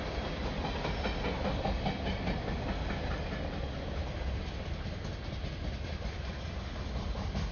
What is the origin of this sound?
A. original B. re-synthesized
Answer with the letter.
A